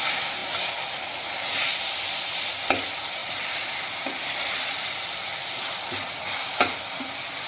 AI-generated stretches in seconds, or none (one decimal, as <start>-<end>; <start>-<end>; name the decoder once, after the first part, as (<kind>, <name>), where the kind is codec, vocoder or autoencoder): 3.2-6.8 (vocoder, BigVGAN v2)